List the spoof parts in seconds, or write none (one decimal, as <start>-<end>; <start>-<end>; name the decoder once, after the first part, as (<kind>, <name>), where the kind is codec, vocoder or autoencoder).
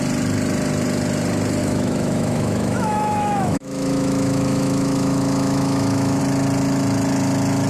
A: 1.6-6.2 (autoencoder, DAC-VAE)